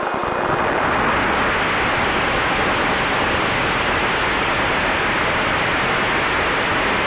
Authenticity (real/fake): real